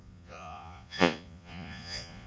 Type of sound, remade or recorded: remade